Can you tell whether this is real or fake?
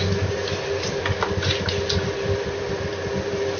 real